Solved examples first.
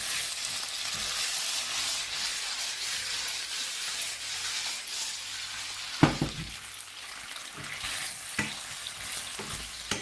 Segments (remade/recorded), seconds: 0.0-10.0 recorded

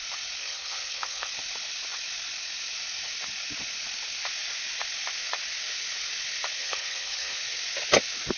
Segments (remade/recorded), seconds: 0.0-0.4 recorded; 0.4-1.3 remade; 1.3-6.6 recorded; 6.6-7.4 remade; 7.4-8.4 recorded

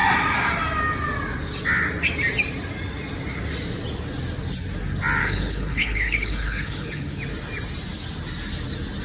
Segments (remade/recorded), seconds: 0.0-5.2 recorded; 5.2-7.2 remade; 7.2-9.0 recorded

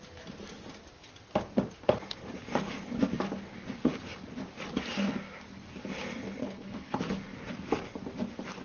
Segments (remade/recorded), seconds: 0.0-6.4 recorded; 6.4-7.0 remade; 7.0-8.6 recorded